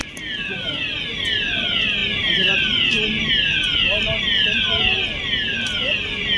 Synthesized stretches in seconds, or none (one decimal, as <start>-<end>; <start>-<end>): 2.0-3.3